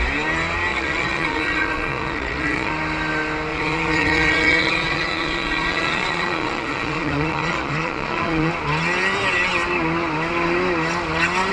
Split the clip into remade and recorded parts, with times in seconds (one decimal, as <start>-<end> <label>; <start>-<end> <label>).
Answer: 0.0-0.7 recorded; 0.7-2.7 remade; 2.7-3.5 recorded; 3.5-8.5 remade; 8.5-11.5 recorded